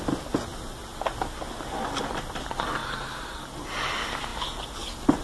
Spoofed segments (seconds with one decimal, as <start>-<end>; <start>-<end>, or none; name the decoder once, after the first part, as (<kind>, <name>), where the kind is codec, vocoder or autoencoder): 2.8-3.4 (vocoder, BigVGAN v2)